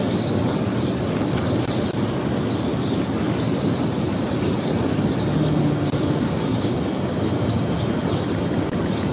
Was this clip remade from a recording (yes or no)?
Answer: no